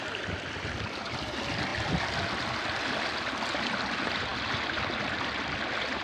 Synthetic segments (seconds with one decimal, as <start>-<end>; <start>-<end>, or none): none